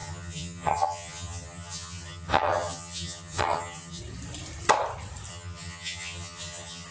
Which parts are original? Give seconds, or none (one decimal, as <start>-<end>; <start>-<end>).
4.0-5.3